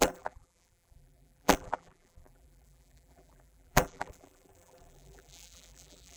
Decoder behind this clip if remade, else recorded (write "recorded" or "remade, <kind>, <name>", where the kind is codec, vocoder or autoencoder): remade, vocoder, BigVGAN v2